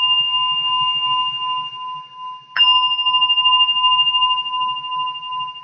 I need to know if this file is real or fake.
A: real